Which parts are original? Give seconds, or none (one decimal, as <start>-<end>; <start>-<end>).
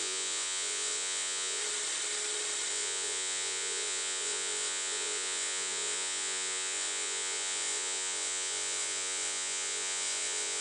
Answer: 1.6-2.7